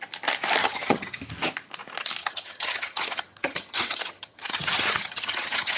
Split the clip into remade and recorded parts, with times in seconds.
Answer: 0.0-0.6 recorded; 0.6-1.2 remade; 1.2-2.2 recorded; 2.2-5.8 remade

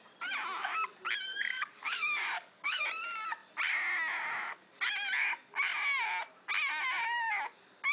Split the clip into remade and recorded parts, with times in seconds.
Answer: 0.0-1.3 recorded; 1.3-2.8 remade; 2.8-7.9 recorded

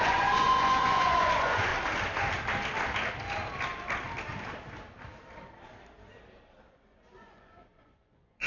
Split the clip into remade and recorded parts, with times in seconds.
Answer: 0.0-1.7 remade; 1.7-6.7 recorded; 6.7-8.5 remade

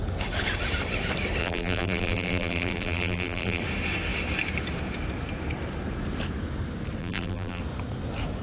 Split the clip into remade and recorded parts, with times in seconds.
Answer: 0.0-1.4 recorded; 1.4-3.6 remade; 3.6-7.0 recorded; 7.0-7.6 remade; 7.6-8.4 recorded

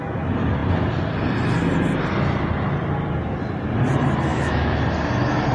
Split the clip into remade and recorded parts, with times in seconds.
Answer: 0.0-4.3 recorded; 4.3-4.8 remade; 4.8-5.5 recorded

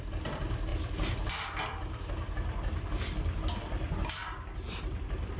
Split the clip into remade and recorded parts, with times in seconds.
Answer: 0.0-5.4 recorded